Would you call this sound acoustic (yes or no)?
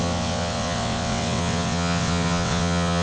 no